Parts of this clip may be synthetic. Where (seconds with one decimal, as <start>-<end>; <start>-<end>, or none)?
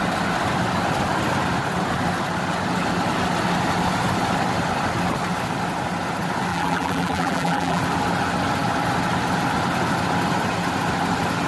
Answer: 6.5-7.8